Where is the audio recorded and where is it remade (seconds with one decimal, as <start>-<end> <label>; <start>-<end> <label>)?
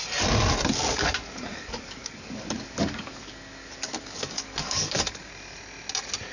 0.0-1.5 recorded; 1.5-5.3 remade; 5.3-6.3 recorded